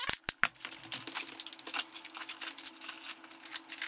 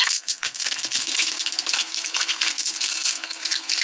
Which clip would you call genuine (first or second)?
first